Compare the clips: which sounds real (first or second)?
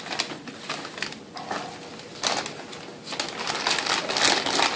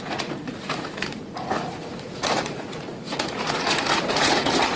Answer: first